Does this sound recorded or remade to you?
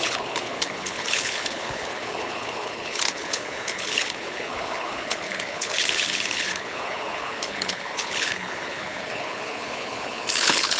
remade